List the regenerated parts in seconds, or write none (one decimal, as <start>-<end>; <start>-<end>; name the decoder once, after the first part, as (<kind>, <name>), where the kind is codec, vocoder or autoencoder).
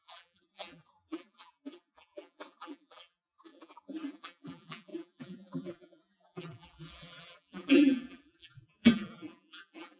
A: 0.0-10.0 (vocoder, BigVGAN v2)